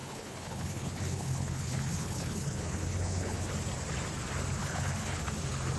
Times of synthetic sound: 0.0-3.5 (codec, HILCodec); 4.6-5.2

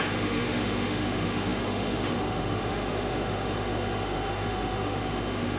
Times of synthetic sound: 0.0-5.6 (autoencoder, DAC-VAE)

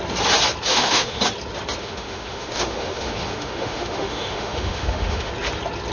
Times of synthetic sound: 0.7-1.2 (autoencoder, DAC-VAE); 1.8-5.3

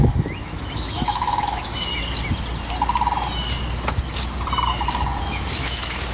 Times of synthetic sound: 0.0-1.9 (autoencoder, DAC-VAE); 5.2-6.1

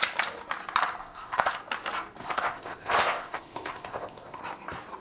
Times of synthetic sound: 1.0-1.6 (codec, ZipCodec); 2.2-4.4

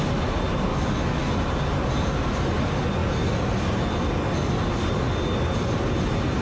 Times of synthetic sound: 0.7-1.2 (autoencoder, DAC-VAE)